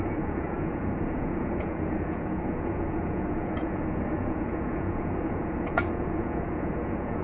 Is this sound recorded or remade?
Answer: remade